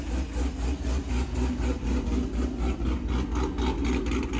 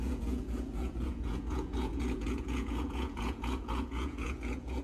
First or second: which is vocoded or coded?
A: second